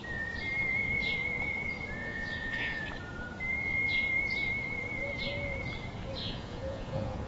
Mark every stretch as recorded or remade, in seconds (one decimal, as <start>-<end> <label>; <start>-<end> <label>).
0.0-2.0 recorded; 2.0-2.8 remade; 2.8-6.2 recorded; 6.2-7.3 remade

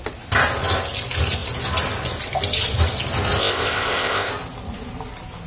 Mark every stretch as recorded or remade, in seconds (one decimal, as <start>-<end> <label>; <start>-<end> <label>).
0.0-3.4 recorded; 3.4-4.3 remade; 4.3-5.5 recorded

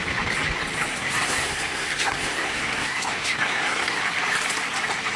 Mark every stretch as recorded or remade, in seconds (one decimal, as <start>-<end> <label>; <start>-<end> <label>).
0.0-0.9 recorded; 0.9-4.0 remade; 4.0-5.2 recorded

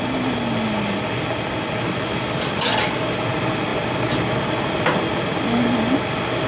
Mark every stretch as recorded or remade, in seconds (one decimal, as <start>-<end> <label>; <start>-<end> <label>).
0.0-6.5 recorded

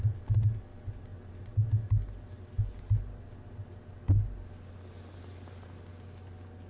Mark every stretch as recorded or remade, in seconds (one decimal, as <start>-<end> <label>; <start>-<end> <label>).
0.0-6.7 recorded